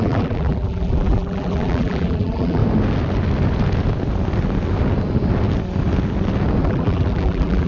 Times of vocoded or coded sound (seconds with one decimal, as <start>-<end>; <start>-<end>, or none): 0.0-2.6; 6.6-7.7